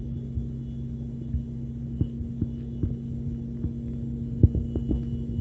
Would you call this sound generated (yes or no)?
no